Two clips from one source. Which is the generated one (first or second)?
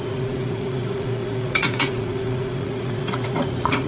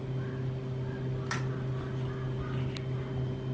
first